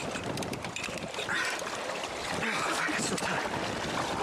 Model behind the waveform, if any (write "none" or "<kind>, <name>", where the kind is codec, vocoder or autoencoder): vocoder, BigVGAN v2